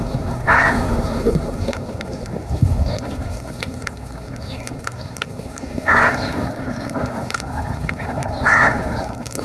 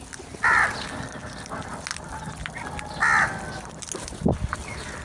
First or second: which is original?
second